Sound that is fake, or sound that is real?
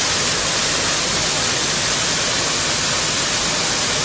real